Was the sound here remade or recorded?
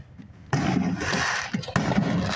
recorded